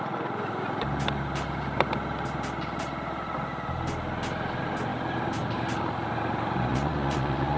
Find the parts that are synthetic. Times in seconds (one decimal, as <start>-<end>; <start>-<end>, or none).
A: 6.7-7.6